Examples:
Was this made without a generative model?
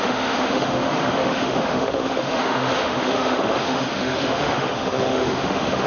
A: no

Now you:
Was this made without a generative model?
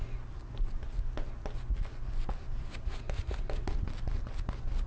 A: yes